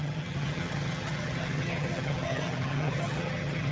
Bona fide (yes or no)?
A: no